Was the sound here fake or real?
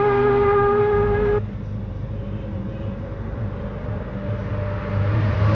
real